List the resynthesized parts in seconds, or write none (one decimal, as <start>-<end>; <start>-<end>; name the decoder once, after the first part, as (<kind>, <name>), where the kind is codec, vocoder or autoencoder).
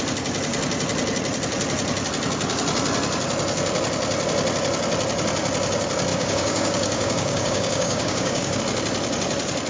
6.1-8.6 (codec, DAC)